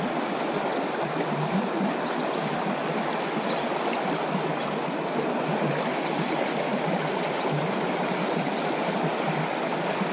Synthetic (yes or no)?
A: no